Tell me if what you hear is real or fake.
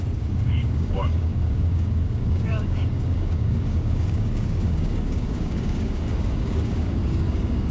fake